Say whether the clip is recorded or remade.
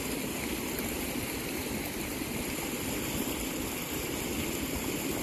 recorded